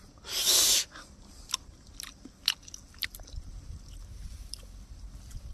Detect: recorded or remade recorded